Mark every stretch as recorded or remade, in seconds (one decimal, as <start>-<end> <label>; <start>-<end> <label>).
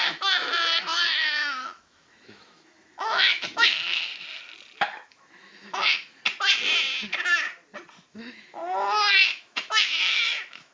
0.0-4.1 remade; 4.1-4.8 recorded; 4.8-6.2 remade; 6.2-8.1 recorded; 8.1-8.6 remade; 8.6-9.1 recorded; 9.1-10.7 remade